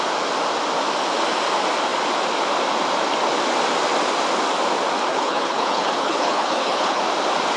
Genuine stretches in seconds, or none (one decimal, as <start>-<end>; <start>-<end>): 0.0-5.1; 7.0-7.6